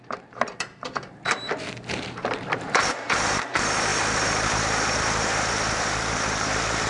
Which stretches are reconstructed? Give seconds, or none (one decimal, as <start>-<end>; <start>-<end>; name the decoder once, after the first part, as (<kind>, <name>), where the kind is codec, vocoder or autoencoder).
0.0-6.9 (vocoder, BigVGAN v2)